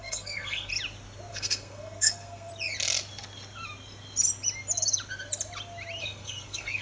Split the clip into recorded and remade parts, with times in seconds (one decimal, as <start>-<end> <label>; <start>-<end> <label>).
0.0-0.7 remade; 0.7-1.3 recorded; 1.3-2.5 remade; 2.5-6.0 recorded; 6.0-6.8 remade